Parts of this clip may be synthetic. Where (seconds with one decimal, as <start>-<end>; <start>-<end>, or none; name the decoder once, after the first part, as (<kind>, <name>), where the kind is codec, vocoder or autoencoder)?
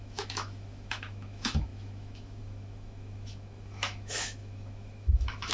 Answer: 0.0-5.5 (autoencoder, DAC-VAE)